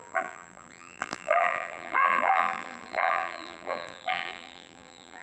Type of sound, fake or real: fake